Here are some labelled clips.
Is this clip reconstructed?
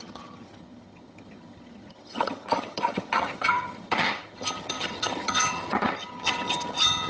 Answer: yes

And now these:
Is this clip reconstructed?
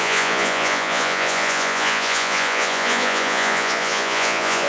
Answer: yes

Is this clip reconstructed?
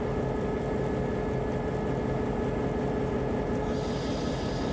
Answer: no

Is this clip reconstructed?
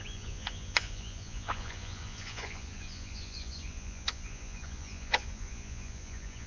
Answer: yes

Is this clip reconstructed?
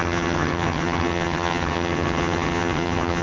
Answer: yes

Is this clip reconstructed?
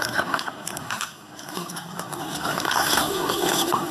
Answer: yes